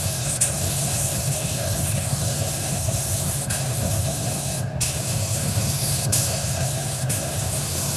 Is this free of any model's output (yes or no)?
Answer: no